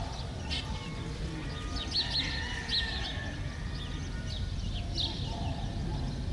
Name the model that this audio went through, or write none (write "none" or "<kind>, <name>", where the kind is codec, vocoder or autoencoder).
none